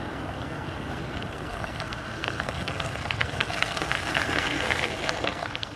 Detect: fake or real fake